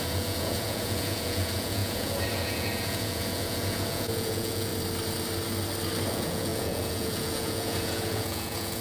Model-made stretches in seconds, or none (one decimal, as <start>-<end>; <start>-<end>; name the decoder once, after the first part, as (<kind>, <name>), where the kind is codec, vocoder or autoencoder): 0.0-4.7 (vocoder, Vocos); 6.1-8.8